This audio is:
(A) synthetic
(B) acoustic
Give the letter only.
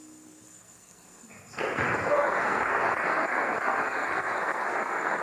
A